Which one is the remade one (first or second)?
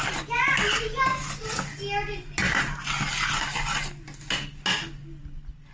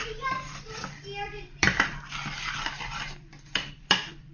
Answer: second